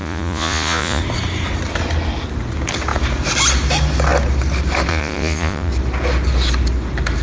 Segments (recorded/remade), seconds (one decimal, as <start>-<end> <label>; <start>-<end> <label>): 0.0-1.0 remade; 1.0-4.9 recorded; 4.9-5.7 remade; 5.7-7.2 recorded